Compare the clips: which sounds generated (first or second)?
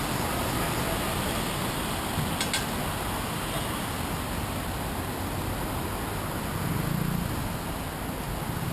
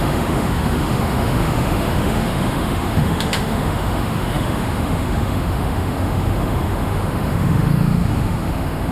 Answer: second